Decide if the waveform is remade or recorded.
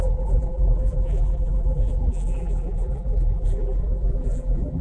remade